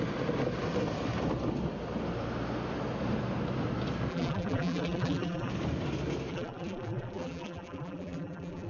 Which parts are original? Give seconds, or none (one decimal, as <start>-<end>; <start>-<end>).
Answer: 0.0-4.1; 5.5-6.3